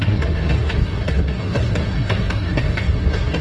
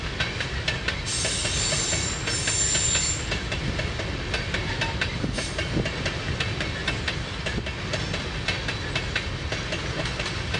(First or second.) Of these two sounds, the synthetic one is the first